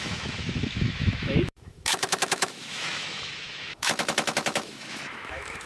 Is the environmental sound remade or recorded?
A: remade